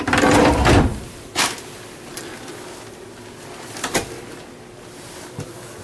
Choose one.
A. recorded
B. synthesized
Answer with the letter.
A